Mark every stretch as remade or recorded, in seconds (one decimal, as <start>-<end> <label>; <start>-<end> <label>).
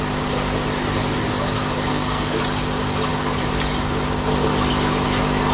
0.0-1.9 recorded; 1.9-2.4 remade; 2.4-5.5 recorded